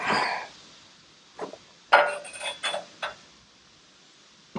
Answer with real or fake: real